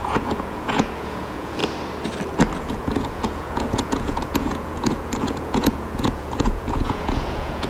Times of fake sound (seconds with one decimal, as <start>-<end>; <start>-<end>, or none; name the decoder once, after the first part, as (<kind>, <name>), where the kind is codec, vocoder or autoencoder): 0.0-1.6 (vocoder, Vocos); 2.6-7.7